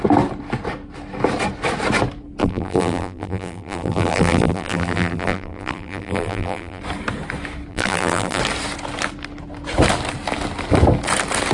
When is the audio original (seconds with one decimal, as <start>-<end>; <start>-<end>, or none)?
0.0-2.4; 6.8-7.7; 8.4-11.5